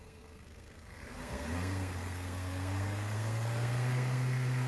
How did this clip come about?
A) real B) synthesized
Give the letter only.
B